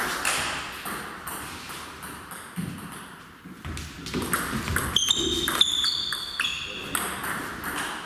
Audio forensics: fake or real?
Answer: real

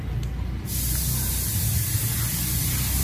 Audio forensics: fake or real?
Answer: real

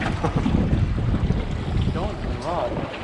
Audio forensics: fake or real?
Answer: real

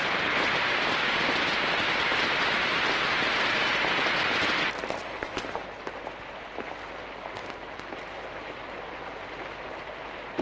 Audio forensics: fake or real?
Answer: real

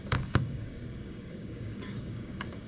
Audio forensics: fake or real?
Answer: fake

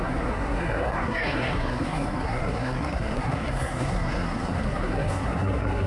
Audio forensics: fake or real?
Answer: fake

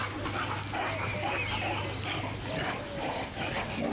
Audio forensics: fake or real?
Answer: real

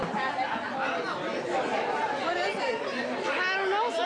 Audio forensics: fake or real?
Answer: real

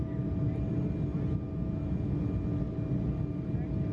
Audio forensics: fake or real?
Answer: real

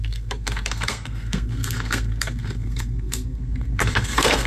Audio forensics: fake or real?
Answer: fake